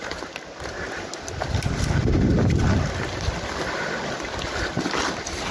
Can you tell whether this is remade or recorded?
recorded